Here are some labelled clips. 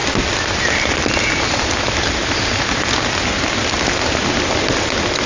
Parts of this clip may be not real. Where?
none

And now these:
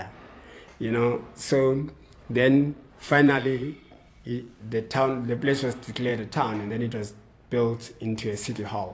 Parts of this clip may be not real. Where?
2.0-4.6 (vocoder, Vocos)

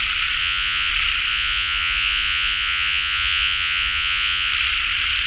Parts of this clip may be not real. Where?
0.4-0.9 (vocoder, Vocos); 1.3-4.5